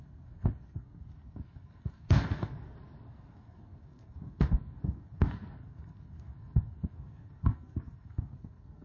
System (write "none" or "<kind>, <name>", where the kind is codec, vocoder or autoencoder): codec, SNAC